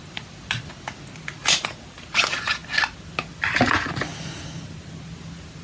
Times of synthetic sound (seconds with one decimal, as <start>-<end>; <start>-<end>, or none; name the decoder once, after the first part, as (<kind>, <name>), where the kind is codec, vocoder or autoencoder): none